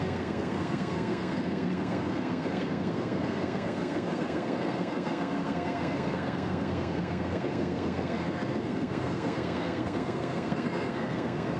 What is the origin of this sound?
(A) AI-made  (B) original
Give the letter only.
A